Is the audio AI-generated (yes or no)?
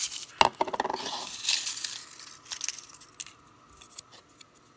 no